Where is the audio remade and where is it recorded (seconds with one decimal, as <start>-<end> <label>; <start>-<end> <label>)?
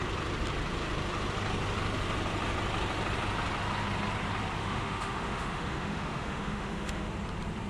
0.0-4.6 recorded; 4.6-7.1 remade; 7.1-7.7 recorded